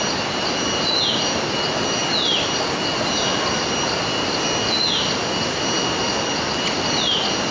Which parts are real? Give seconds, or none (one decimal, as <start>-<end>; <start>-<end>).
0.0-7.5